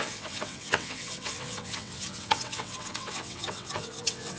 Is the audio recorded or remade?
remade